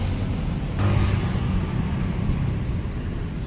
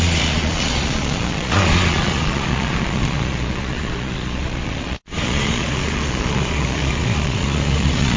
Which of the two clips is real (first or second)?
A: first